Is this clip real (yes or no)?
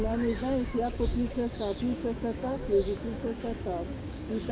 no